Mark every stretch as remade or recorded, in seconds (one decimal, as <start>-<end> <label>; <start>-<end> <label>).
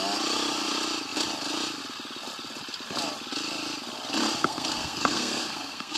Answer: 0.0-4.4 recorded; 4.4-6.0 remade